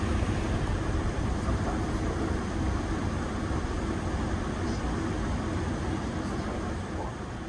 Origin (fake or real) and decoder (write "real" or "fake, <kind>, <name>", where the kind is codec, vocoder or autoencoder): fake, vocoder, BigVGAN v2